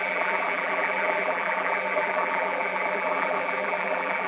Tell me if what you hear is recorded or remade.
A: remade